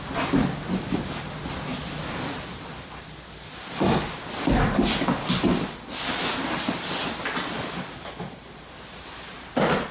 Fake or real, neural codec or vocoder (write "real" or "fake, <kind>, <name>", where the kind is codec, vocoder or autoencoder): real